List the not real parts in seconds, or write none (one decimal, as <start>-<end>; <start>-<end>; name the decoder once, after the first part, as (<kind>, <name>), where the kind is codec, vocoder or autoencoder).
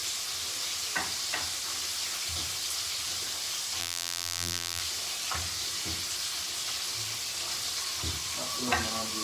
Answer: 3.8-4.8 (vocoder, BigVGAN v2)